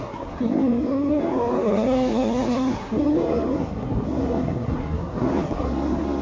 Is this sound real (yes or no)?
no